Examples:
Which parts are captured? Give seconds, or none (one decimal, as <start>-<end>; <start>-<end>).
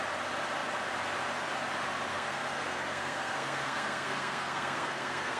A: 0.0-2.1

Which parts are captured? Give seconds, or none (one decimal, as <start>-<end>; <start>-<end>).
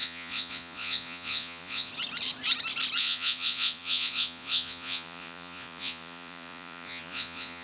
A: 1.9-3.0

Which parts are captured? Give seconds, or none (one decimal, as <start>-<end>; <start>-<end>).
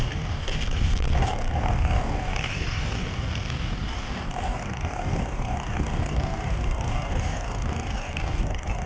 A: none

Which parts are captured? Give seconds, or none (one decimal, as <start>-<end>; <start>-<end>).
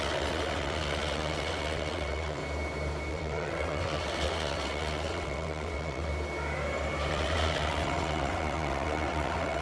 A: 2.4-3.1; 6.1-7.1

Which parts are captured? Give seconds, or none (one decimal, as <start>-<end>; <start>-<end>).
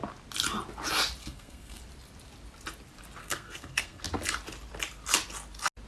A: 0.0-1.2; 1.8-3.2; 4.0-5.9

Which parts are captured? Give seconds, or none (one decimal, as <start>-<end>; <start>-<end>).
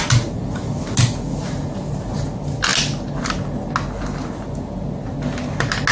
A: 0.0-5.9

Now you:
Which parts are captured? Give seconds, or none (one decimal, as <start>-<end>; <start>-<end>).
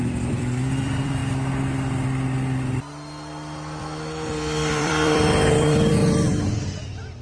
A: 1.2-4.7